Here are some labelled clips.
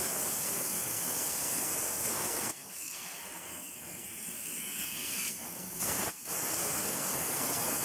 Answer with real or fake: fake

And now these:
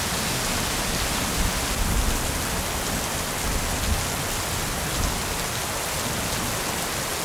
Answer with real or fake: real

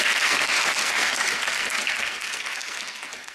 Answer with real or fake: fake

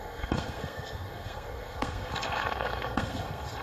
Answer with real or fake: fake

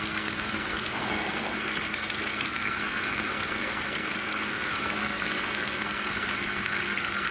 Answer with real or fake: fake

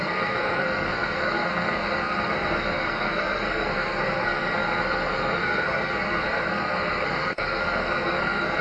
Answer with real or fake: fake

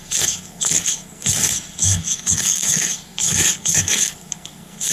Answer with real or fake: fake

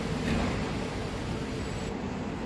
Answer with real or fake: real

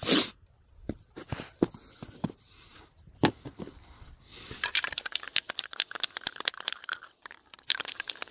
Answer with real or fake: real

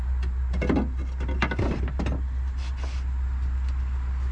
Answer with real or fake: real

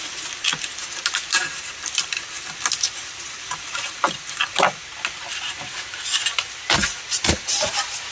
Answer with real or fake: real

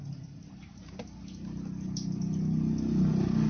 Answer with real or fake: real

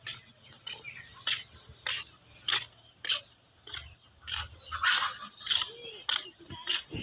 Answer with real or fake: real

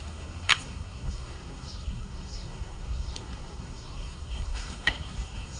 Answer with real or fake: fake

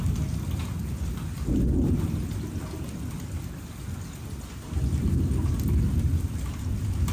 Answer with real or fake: real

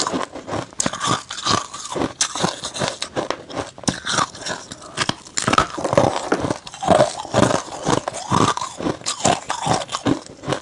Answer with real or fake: real